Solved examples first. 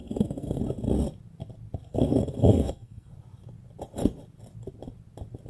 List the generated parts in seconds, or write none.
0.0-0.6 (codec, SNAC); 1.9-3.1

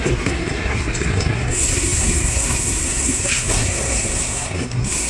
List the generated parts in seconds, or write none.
0.0-5.1 (codec, SNAC)

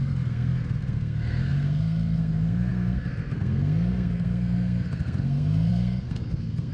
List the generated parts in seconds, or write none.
0.0-6.7 (codec, SNAC)

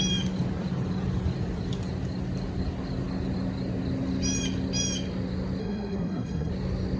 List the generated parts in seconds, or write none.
5.6-6.5 (codec, SNAC)

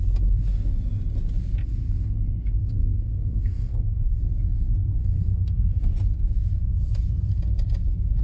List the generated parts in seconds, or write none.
2.6-4.2 (codec, SNAC); 5.0-5.8